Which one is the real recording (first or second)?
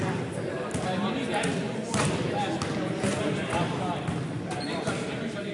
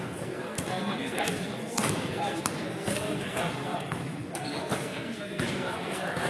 first